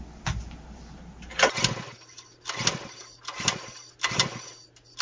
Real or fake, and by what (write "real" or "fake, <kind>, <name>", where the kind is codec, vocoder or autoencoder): real